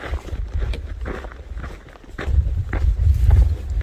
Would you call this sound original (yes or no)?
yes